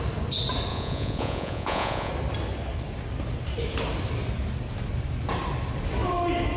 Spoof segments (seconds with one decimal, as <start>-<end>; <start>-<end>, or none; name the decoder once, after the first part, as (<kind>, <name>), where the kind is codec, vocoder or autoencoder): 0.7-2.1 (vocoder, Vocos)